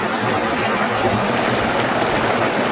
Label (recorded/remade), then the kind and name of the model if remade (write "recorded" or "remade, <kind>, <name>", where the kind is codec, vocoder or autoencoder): recorded